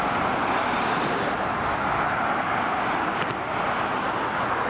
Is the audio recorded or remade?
recorded